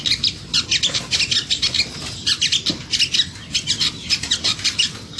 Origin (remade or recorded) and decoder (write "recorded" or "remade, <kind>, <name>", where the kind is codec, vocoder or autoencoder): recorded